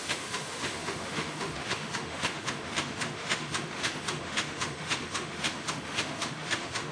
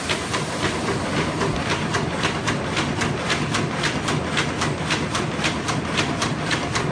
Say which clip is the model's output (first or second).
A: first